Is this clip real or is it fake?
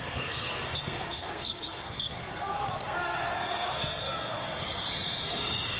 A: fake